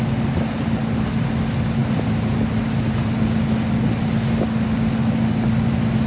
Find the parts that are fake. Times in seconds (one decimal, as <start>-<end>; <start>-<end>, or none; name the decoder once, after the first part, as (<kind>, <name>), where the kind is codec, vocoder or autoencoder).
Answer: none